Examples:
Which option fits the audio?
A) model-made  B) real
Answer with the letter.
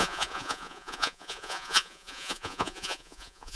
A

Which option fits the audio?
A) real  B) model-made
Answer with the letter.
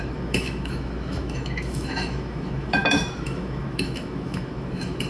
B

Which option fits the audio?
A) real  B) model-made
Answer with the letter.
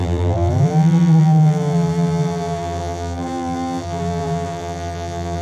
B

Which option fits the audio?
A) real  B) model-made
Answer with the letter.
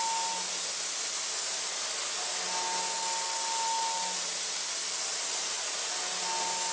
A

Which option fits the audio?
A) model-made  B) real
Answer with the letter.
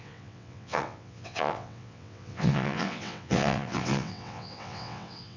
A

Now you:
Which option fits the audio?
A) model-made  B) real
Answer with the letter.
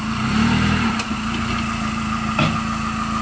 B